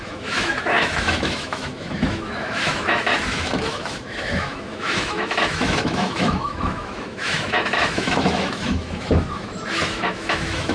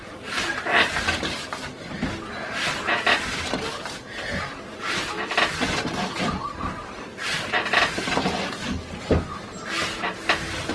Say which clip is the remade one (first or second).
first